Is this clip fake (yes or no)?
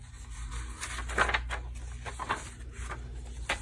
no